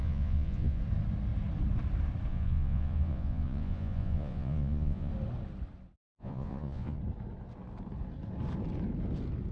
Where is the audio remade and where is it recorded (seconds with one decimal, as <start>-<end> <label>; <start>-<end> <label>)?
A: 0.0-0.8 remade; 0.8-2.3 recorded; 2.3-5.1 remade; 5.1-6.0 recorded; 6.0-7.0 remade; 7.0-9.5 recorded